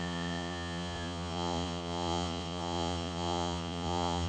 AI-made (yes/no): yes